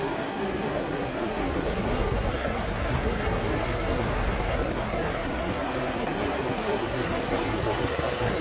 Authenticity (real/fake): fake